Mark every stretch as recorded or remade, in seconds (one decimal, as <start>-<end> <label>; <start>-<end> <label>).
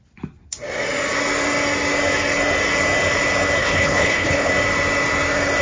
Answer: 0.0-3.6 recorded; 3.6-4.5 remade; 4.5-5.6 recorded